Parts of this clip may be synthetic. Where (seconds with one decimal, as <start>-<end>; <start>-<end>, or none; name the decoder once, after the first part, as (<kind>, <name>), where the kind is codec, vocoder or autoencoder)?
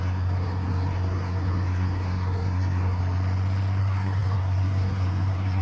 0.0-3.0 (codec, SNAC); 3.8-5.6